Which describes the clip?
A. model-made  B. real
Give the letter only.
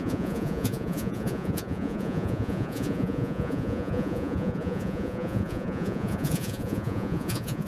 A